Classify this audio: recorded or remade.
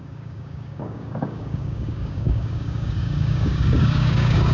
remade